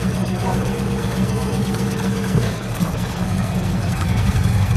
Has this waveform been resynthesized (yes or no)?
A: yes